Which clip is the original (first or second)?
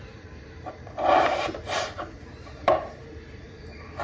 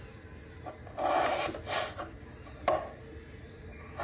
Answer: second